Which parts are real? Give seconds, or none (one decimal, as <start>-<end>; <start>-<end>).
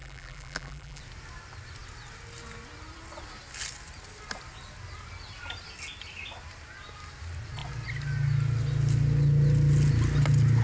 1.0-10.6